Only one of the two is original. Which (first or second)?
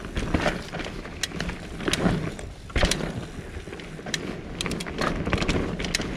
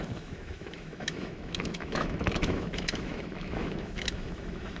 first